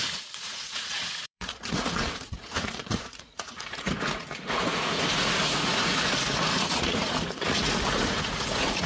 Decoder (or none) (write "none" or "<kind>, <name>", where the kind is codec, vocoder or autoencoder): vocoder, Vocos